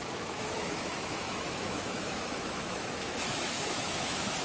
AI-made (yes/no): yes